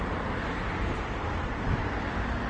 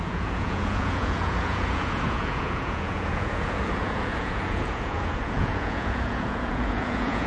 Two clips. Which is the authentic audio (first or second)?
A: first